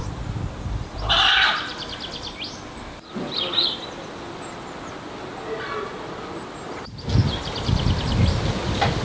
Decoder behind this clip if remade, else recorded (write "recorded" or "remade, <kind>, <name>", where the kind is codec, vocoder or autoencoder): recorded